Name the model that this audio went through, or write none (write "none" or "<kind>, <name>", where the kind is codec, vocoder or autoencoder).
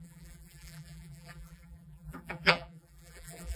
vocoder, BigVGAN v2